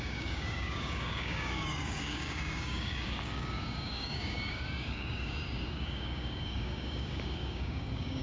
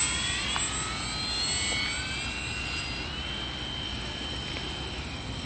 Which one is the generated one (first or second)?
first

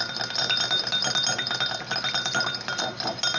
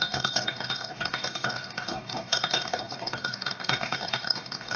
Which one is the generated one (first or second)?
second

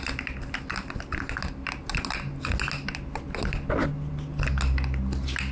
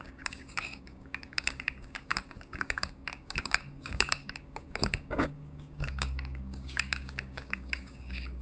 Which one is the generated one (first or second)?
second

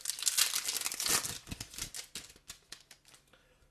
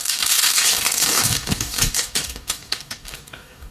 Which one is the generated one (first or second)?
second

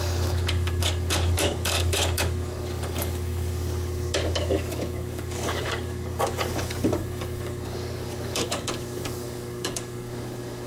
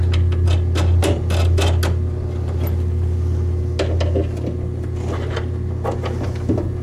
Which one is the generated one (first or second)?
first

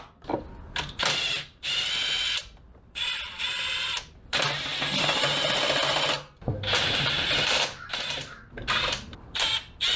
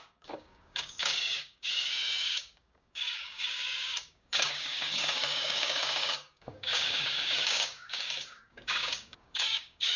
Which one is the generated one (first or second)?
second